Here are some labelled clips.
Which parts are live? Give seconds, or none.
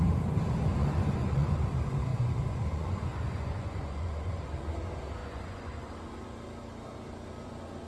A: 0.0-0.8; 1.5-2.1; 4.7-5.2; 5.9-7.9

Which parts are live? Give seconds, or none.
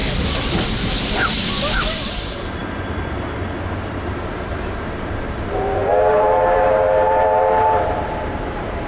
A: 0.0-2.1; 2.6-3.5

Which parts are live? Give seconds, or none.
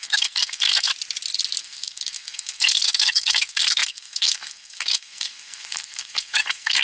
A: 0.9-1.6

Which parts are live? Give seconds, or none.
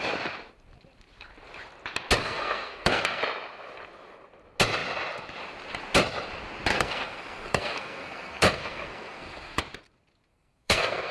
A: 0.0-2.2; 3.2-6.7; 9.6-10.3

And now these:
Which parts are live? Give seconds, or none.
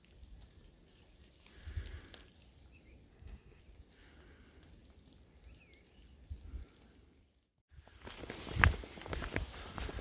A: 0.0-3.1; 3.6-10.0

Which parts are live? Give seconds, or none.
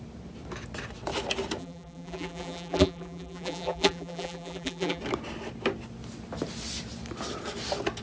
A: 0.0-1.6; 5.0-8.0